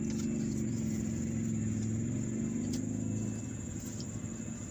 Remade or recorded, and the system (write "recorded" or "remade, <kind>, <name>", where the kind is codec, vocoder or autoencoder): recorded